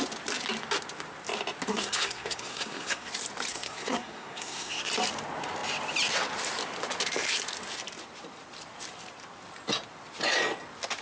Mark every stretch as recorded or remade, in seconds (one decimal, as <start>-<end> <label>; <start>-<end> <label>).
0.0-1.7 recorded; 1.7-3.1 remade; 3.1-3.5 recorded; 3.5-4.9 remade; 4.9-11.0 recorded